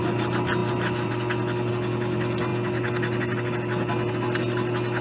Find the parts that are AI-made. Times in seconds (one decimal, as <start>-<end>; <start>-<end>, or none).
none